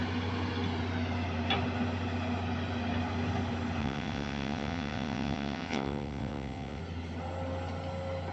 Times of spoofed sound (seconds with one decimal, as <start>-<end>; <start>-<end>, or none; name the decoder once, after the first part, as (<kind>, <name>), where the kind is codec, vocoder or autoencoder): 3.8-6.8 (vocoder, WaveNeXt)